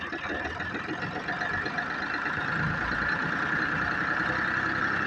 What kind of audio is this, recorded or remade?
remade